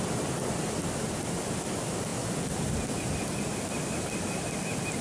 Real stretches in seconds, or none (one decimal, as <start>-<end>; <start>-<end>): 0.0-5.0